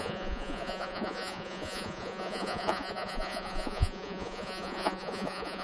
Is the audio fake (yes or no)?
yes